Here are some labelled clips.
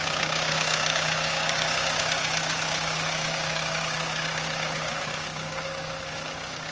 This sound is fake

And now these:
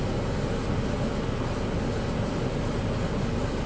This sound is real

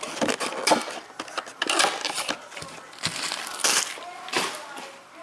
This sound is real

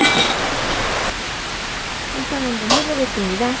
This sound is real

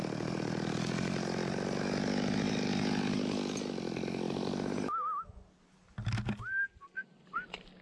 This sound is real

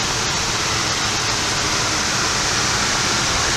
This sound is real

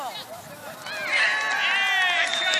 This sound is real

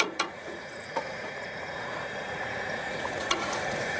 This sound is fake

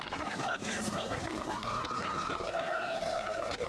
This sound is fake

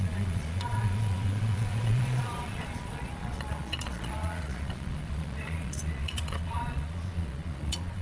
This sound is fake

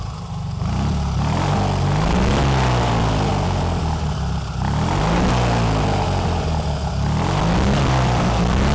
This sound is real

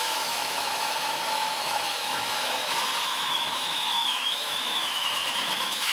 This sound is fake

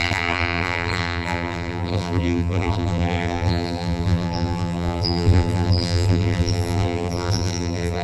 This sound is fake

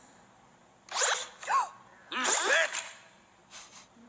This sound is real